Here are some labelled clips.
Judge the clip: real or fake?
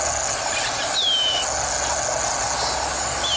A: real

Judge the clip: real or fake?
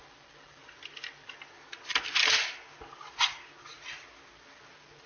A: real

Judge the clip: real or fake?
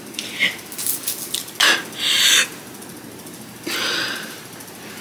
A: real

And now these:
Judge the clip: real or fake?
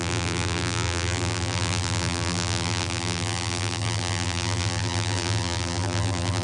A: fake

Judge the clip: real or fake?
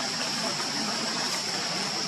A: fake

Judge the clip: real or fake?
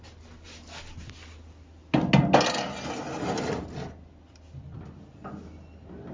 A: real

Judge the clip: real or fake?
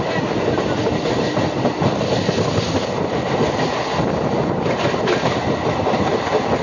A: real